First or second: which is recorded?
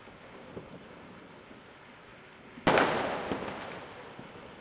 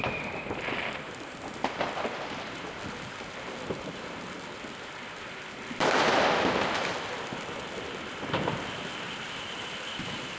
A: first